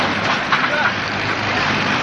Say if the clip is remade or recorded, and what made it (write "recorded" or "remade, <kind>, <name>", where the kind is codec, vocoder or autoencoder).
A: remade, vocoder, BigVGAN v2